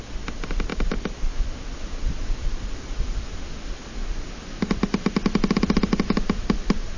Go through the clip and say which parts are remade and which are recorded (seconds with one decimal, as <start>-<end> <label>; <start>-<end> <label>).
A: 0.0-0.7 recorded; 0.7-1.3 remade; 1.3-7.0 recorded